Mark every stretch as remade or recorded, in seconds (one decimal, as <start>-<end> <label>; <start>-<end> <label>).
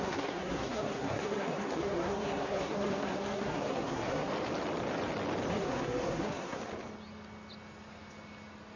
0.0-4.3 remade; 4.3-5.5 recorded; 5.5-6.6 remade; 6.6-8.8 recorded